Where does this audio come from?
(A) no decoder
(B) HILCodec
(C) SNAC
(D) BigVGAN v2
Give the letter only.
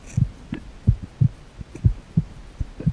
A